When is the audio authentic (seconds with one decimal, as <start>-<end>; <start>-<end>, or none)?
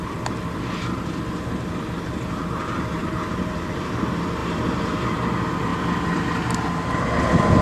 0.0-3.0; 3.9-7.6